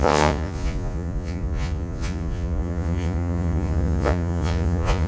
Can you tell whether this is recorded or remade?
remade